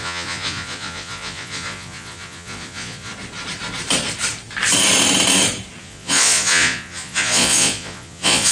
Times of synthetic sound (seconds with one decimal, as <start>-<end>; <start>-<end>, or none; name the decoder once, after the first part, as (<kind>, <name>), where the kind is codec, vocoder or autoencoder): 0.0-3.1 (vocoder, Vocos); 5.8-8.5